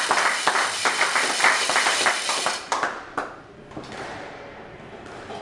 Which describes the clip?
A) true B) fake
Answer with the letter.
B